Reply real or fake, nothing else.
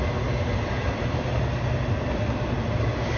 real